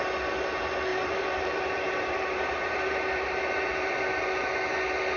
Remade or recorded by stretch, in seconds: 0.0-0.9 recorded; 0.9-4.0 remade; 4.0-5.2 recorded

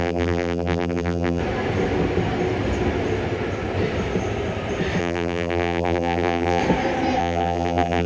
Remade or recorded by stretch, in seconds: 0.0-1.4 remade; 1.4-5.0 recorded; 5.0-6.6 remade; 6.6-7.2 recorded; 7.2-8.1 remade

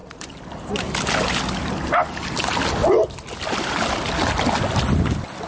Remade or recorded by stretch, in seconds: 0.0-5.5 recorded